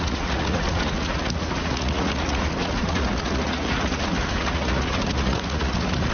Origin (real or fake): fake